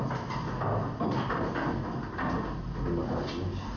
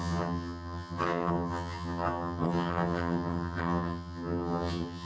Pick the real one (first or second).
first